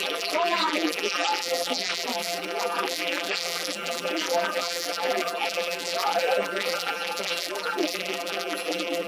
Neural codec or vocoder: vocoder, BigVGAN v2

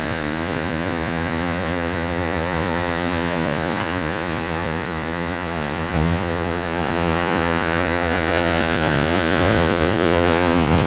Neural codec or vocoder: vocoder, Vocos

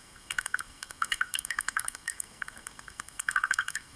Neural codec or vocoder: codec, SNAC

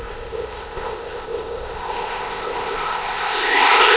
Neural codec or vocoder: codec, ZipCodec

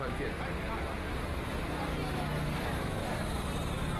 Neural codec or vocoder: none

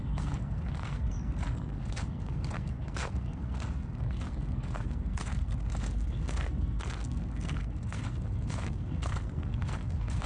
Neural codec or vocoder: codec, SNAC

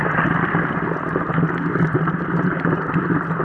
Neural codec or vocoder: none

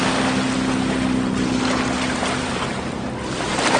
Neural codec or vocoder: none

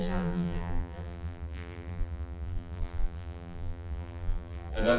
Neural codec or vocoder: vocoder, BigVGAN v2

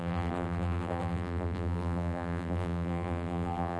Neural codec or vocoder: vocoder, BigVGAN v2